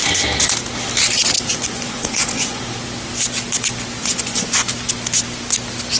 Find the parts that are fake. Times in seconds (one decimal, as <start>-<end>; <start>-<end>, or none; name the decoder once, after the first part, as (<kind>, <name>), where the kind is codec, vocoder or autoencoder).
1.5-2.6 (vocoder, Vocos); 4.0-4.7